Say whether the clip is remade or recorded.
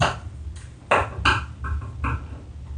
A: recorded